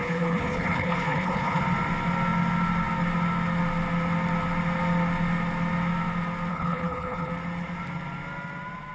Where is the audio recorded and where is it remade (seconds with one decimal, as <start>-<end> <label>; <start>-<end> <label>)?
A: 0.0-1.6 remade; 1.6-6.5 recorded; 6.5-7.3 remade; 7.3-8.9 recorded